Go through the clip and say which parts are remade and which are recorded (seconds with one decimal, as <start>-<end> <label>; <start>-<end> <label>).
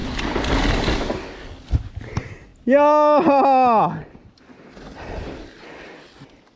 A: 0.0-6.6 recorded